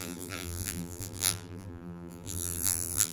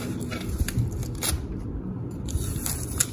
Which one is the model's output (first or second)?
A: first